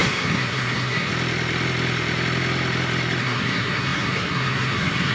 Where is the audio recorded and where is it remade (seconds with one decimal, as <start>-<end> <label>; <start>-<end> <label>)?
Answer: 0.0-1.1 remade; 1.1-3.2 recorded; 3.2-5.1 remade